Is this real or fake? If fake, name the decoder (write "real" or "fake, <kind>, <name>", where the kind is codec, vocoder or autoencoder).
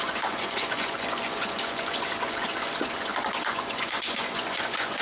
fake, vocoder, Vocos